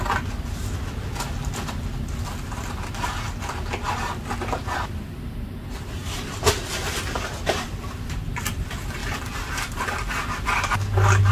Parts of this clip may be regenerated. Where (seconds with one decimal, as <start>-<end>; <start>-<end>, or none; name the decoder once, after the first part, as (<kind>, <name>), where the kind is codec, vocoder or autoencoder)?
6.0-8.2 (vocoder, BigVGAN v2); 9.0-10.7